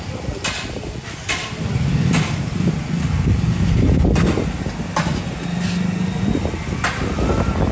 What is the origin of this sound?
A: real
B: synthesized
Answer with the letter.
A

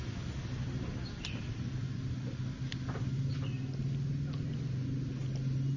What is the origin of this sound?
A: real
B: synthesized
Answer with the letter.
A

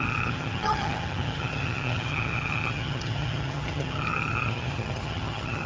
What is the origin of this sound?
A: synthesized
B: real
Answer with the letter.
A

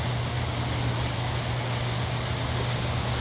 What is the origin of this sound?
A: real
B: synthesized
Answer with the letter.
A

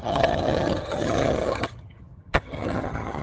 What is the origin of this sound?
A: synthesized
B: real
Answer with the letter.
A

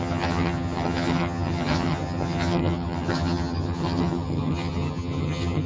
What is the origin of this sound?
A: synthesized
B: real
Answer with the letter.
A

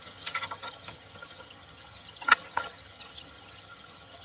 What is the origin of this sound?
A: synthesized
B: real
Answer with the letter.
A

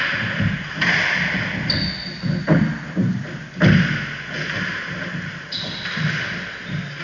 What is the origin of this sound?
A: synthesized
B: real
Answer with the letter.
B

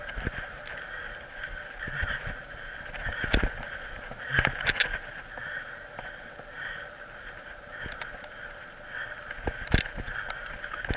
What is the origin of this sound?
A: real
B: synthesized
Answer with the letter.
A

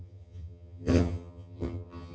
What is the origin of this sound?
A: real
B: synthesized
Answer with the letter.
B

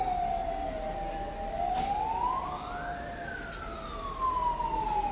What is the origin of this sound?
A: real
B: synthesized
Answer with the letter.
A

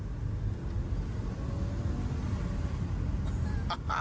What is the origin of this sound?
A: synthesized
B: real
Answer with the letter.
B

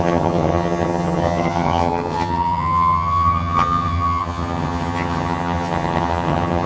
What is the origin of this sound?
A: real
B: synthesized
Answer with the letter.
B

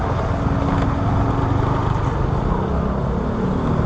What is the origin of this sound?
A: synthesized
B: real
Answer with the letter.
B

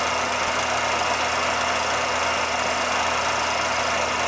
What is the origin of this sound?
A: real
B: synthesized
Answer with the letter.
A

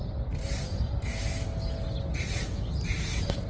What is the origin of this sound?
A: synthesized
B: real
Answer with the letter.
B